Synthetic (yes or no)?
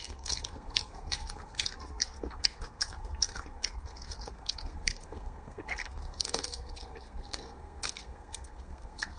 yes